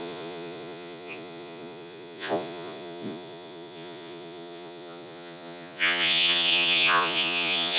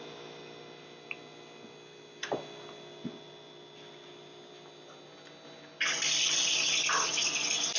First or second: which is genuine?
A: second